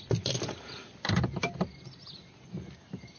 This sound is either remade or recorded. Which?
recorded